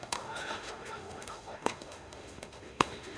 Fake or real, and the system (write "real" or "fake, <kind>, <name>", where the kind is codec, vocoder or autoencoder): fake, autoencoder, DAC-VAE